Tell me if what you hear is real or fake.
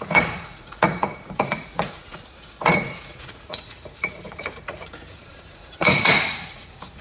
fake